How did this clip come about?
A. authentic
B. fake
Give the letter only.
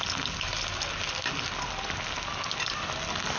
A